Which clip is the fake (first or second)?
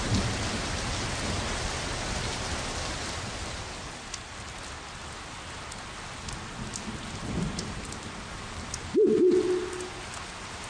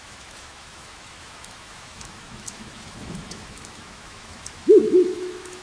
second